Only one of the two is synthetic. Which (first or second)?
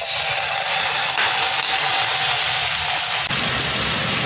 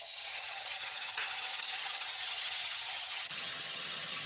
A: second